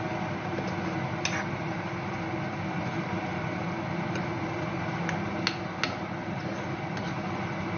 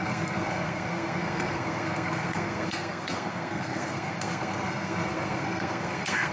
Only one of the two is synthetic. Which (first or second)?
second